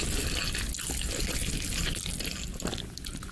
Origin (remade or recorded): recorded